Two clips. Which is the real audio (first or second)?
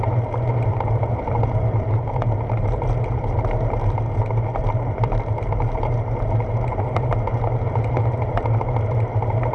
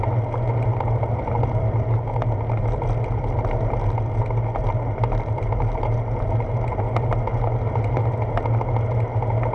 second